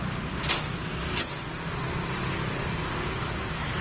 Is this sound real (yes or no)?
yes